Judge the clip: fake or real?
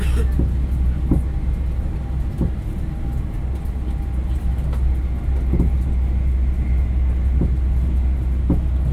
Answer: real